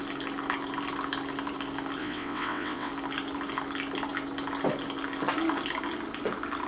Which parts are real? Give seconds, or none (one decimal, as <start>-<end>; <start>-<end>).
0.0-2.0; 2.9-6.7